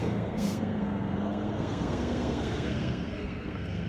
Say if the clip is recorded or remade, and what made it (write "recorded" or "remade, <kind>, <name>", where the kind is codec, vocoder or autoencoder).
remade, codec, SNAC